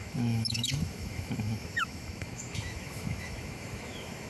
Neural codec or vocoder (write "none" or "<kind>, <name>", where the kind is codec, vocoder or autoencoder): autoencoder, DAC-VAE